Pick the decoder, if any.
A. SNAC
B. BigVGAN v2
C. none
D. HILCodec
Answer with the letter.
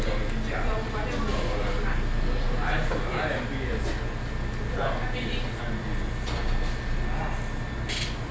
C